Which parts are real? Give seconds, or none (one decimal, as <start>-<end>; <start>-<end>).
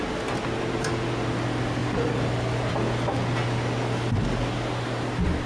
0.0-5.5